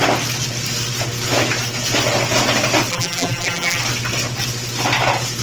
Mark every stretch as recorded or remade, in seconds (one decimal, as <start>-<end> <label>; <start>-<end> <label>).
0.0-2.9 recorded; 2.9-3.8 remade; 3.8-5.4 recorded